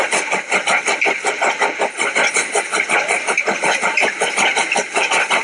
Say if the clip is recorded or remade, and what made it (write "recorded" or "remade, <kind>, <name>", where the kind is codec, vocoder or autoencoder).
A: recorded